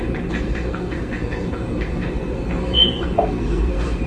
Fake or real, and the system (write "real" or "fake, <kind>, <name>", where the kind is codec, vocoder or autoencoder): fake, codec, SNAC